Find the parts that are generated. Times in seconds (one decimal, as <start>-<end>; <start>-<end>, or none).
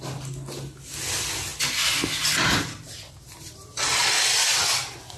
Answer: none